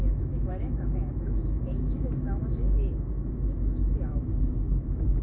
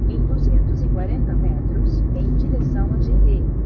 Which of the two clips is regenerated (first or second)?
first